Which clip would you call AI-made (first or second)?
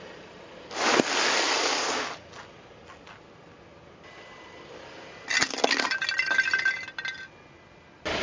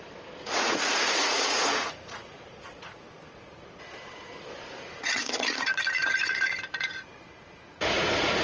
second